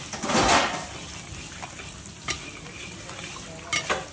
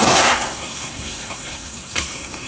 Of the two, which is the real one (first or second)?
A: first